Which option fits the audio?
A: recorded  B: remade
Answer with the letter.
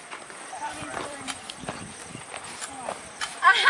B